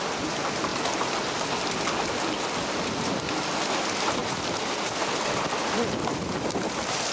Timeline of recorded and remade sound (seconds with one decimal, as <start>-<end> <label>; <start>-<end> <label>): 0.0-4.2 recorded; 4.2-4.9 remade; 4.9-7.1 recorded